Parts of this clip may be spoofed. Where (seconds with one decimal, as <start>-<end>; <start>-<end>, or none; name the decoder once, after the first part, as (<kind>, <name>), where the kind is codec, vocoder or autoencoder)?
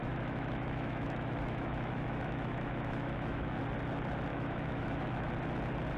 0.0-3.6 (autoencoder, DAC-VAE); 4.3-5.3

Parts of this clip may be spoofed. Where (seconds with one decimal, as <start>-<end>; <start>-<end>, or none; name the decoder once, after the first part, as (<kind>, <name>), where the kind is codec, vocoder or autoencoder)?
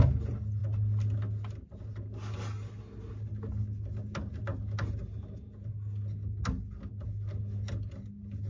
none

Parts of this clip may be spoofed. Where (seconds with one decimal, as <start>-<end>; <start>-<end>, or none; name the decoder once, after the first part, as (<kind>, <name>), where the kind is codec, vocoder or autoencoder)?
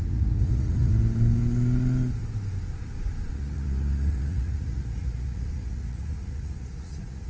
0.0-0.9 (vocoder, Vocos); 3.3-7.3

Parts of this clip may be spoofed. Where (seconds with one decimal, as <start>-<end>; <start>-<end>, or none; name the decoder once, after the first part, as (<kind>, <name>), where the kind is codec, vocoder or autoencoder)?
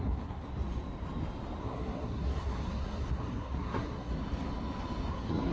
0.0-0.4 (codec, SNAC); 1.6-4.1; 5.1-5.5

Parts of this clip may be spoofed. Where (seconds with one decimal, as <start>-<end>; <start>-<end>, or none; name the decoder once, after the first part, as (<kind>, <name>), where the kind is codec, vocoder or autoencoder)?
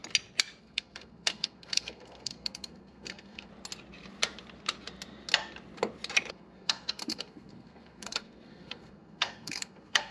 0.6-3.5 (codec, SNAC); 6.3-10.1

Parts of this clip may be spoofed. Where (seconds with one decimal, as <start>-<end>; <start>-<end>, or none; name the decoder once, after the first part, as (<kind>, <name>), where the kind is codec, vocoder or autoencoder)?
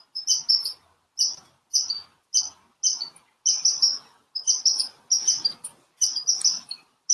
none